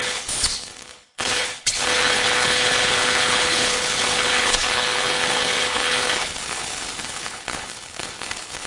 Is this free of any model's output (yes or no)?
no